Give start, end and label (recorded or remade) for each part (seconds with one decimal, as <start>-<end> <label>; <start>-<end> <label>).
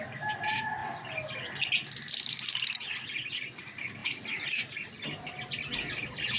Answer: 0.0-6.4 recorded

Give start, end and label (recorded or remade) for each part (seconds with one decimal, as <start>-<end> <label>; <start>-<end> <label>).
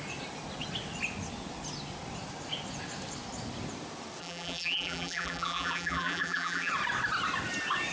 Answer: 0.0-4.2 recorded; 4.2-6.7 remade; 6.7-7.9 recorded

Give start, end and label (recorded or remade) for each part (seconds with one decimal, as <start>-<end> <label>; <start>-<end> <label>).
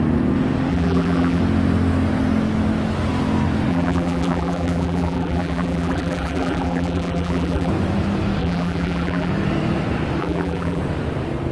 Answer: 0.0-0.7 recorded; 0.7-1.4 remade; 1.4-3.7 recorded; 3.7-7.7 remade; 7.7-8.4 recorded; 8.4-9.3 remade; 9.3-10.2 recorded; 10.2-10.8 remade; 10.8-11.5 recorded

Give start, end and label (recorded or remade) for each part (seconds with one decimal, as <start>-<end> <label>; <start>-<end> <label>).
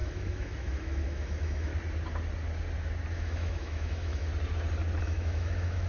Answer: 0.0-1.7 remade; 1.7-3.1 recorded; 3.1-4.3 remade; 4.3-5.0 recorded; 5.0-5.9 remade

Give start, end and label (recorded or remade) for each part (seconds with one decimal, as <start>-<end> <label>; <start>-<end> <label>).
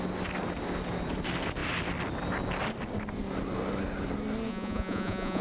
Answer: 0.0-4.5 recorded; 4.5-5.4 remade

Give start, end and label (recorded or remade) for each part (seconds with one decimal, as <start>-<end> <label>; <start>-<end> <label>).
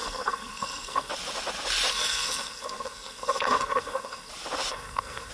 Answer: 0.0-1.1 remade; 1.1-1.9 recorded; 1.9-4.3 remade; 4.3-4.7 recorded; 4.7-5.3 remade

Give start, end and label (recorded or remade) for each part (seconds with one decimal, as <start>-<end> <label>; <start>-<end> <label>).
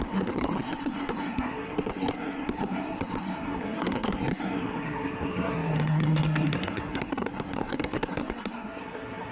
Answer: 0.0-9.3 remade